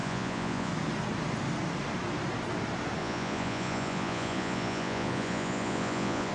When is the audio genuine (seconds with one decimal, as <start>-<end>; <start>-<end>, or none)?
0.7-3.0